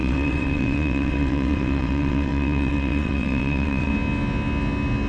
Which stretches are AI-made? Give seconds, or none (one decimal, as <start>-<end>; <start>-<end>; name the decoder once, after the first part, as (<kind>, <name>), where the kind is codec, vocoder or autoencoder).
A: 0.0-3.9 (vocoder, WaveNeXt)